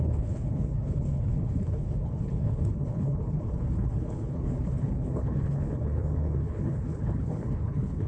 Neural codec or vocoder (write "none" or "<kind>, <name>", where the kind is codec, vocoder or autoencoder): codec, HILCodec